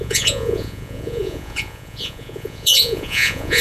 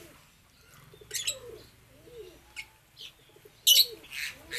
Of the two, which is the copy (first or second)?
first